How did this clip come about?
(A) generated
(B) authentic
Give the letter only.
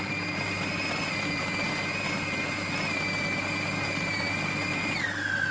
B